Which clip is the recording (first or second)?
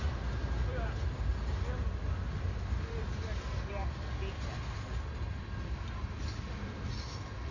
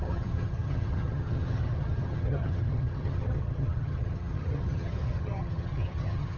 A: first